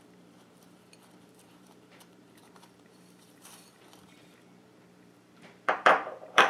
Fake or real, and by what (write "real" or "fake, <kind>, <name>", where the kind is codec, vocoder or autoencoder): fake, vocoder, BigVGAN v2